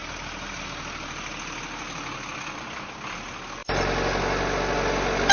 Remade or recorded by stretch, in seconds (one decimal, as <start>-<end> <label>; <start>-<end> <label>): 0.0-5.3 recorded

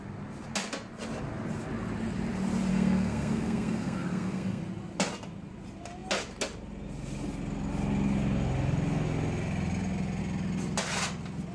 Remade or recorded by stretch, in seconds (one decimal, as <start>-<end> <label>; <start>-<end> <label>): 0.0-2.7 recorded; 2.7-4.6 remade; 4.6-11.5 recorded

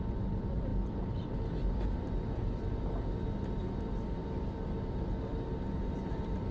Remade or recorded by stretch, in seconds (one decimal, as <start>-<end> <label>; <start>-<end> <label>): 0.0-6.5 remade

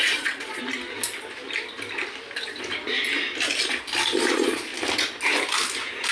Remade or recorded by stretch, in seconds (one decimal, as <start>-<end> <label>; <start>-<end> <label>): 0.0-0.6 remade; 0.6-4.3 recorded; 4.3-4.7 remade; 4.7-6.1 recorded

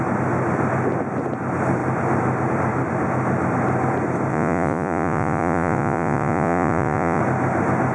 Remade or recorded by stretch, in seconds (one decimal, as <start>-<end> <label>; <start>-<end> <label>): 0.0-4.3 recorded; 4.3-7.2 remade; 7.2-7.9 recorded

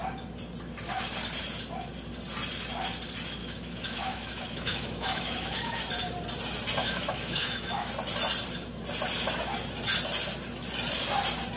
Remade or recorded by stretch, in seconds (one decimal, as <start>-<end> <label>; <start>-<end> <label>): 0.0-3.4 recorded; 3.4-5.8 remade; 5.8-6.8 recorded; 6.8-7.9 remade; 7.9-11.6 recorded

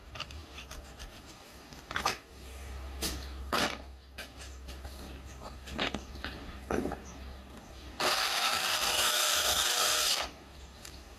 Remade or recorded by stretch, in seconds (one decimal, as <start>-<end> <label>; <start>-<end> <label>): 0.0-11.2 remade

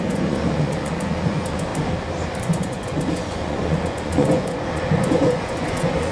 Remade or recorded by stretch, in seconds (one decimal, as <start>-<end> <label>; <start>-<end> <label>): 0.0-1.7 remade; 1.7-2.4 recorded; 2.4-6.1 remade